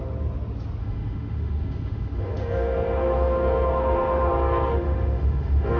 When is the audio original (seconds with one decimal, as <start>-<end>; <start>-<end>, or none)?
0.0-0.8; 4.3-4.7